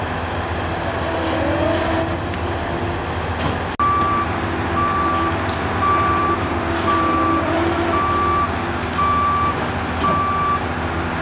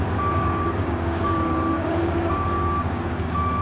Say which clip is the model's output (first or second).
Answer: second